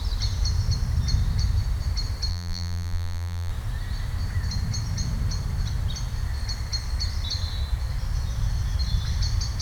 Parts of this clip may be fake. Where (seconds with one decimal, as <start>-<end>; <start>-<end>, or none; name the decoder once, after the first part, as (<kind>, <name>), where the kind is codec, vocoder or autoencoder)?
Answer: 2.3-3.5 (vocoder, BigVGAN v2)